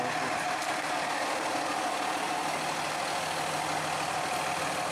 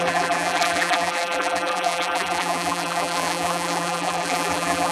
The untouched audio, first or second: first